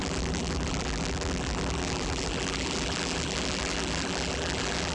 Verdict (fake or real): fake